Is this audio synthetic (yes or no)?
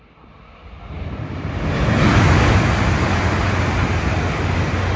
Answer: no